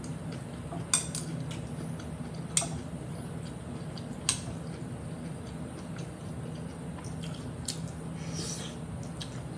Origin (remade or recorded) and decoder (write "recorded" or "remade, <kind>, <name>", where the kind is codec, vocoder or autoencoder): recorded